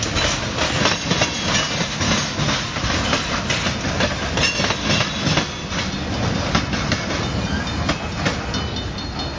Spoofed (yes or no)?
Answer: no